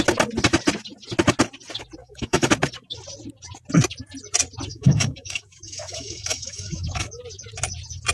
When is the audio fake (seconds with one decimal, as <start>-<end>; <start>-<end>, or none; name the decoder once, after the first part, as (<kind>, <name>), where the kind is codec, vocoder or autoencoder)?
2.0-2.5 (autoencoder, DAC-VAE); 4.7-7.2